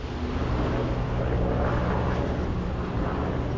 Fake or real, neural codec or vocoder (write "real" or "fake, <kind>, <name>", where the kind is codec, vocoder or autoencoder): real